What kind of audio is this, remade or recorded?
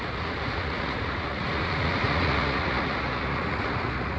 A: remade